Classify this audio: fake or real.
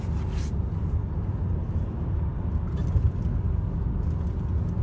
real